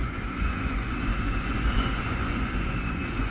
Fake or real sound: fake